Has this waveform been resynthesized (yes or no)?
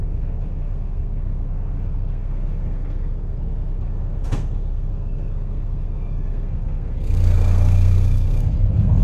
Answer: yes